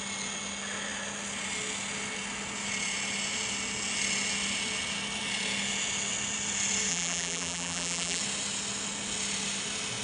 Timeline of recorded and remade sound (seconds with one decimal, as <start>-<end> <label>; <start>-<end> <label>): 0.0-6.9 recorded; 6.9-8.2 remade; 8.2-10.0 recorded